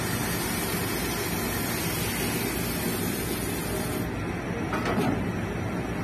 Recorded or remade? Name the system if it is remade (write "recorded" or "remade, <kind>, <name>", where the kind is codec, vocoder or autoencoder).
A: recorded